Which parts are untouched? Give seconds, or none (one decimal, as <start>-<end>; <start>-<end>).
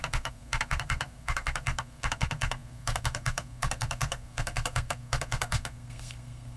none